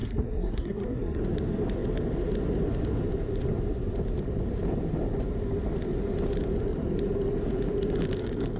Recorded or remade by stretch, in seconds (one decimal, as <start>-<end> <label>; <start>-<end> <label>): 0.0-1.2 remade; 1.2-8.6 recorded